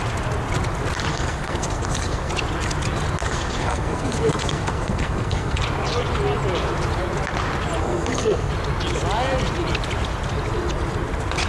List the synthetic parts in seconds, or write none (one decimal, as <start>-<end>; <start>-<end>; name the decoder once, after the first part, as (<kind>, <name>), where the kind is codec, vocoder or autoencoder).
1.1-2.3 (codec, SNAC); 3.2-5.6; 7.8-8.5